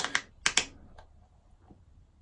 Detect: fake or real real